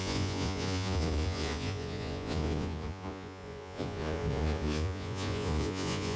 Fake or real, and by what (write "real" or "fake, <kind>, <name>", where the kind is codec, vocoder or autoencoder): fake, vocoder, Vocos